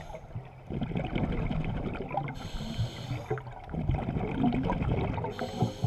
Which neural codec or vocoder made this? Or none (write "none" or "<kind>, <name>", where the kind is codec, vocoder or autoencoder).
none